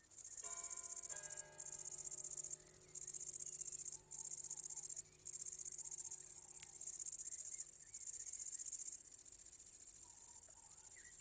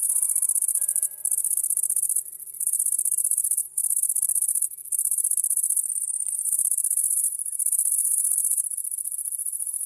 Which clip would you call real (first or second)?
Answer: first